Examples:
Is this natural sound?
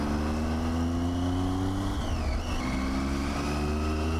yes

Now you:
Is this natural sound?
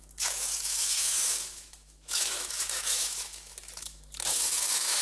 no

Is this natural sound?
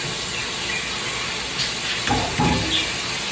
yes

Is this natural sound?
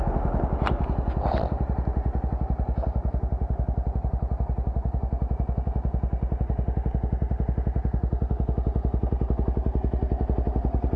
yes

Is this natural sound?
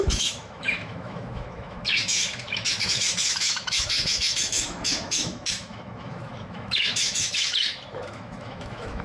no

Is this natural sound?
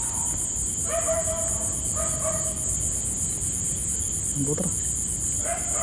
yes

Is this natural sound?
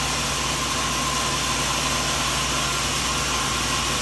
yes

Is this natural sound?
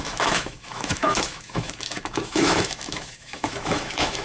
no